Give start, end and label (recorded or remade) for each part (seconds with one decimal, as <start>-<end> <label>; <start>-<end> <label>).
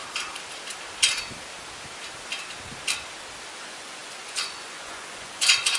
0.0-3.5 recorded; 3.5-5.8 remade